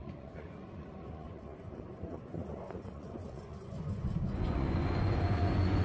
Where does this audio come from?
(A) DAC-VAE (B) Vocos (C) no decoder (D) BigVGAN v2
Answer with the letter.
B